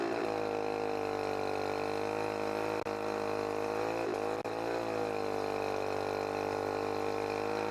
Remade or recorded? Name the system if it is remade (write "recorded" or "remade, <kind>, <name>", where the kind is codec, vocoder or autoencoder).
recorded